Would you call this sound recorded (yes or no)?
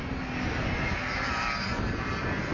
yes